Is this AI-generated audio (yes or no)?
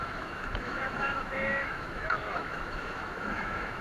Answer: yes